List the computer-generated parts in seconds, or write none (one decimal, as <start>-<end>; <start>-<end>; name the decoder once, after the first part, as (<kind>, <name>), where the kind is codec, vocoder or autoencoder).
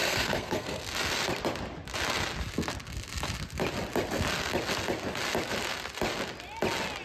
0.0-0.8 (codec, SNAC)